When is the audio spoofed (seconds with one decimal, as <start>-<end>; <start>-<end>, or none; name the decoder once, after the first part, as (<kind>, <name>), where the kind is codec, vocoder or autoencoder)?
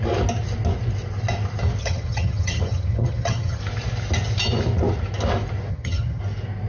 1.8-3.6 (vocoder, HiFi-GAN); 5.7-6.2